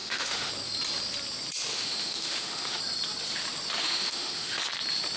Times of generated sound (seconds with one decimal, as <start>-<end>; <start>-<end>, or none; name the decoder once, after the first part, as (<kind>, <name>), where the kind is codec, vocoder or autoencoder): 0.0-0.5 (autoencoder, DAC-VAE); 1.7-2.8; 3.8-4.6